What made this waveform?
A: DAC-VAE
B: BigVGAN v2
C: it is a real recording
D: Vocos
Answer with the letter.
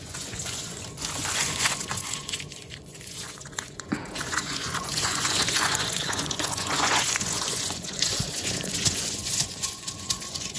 D